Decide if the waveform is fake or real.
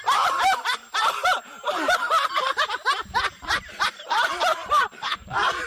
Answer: fake